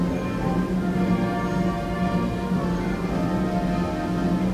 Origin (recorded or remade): recorded